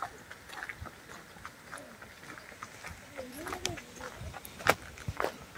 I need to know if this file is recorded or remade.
recorded